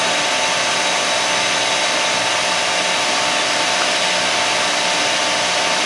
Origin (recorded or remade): recorded